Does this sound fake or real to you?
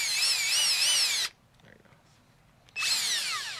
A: real